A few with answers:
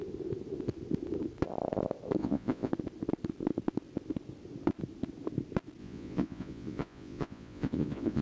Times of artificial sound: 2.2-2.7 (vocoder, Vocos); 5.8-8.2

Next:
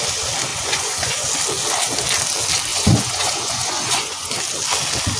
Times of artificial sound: 0.5-1.3 (vocoder, Vocos); 2.7-4.3

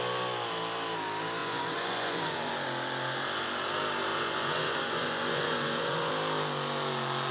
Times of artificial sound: 1.4-2.5 (vocoder, Vocos); 4.1-6.1

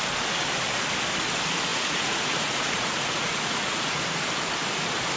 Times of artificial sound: 1.7-4.0 (vocoder, Vocos)

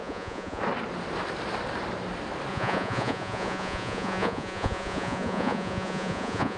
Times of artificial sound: 0.0-0.6 (vocoder, Vocos); 2.5-6.6

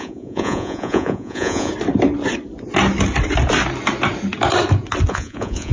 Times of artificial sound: 0.0-1.7 (vocoder, Vocos); 5.1-5.7

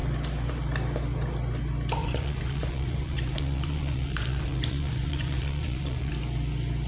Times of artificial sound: 2.0-6.1 (vocoder, Vocos)